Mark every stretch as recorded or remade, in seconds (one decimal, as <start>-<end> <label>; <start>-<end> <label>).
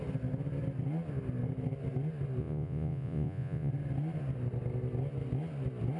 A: 0.0-2.4 recorded; 2.4-3.7 remade; 3.7-6.0 recorded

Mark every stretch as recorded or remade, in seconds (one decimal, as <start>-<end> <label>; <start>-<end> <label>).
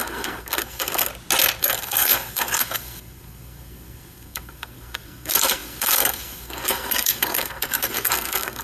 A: 0.0-1.1 remade; 1.1-1.6 recorded; 1.6-8.6 remade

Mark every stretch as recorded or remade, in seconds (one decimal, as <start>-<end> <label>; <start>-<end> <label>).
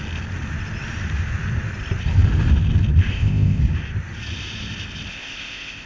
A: 0.0-3.1 recorded; 3.1-3.6 remade; 3.6-5.1 recorded; 5.1-5.9 remade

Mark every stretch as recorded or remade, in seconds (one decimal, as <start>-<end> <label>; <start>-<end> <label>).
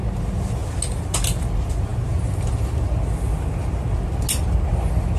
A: 0.0-5.2 recorded